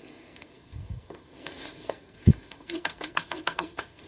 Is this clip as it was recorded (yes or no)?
no